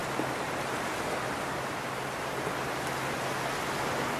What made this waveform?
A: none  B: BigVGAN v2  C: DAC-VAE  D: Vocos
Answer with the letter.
A